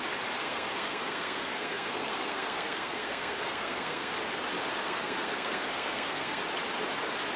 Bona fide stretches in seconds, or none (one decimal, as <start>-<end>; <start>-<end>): 0.0-0.4; 4.1-4.8; 6.4-7.4